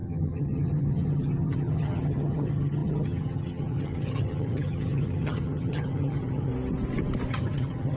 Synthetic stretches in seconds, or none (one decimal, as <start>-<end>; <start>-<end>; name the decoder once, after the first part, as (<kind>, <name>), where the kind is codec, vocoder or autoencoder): 0.0-6.5 (vocoder, HiFi-GAN); 7.3-8.0